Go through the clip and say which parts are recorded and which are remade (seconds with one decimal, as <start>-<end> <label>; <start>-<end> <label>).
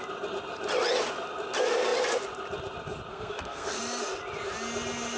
0.0-3.1 recorded; 3.1-3.8 remade; 3.8-5.2 recorded